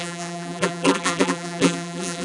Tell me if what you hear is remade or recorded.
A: remade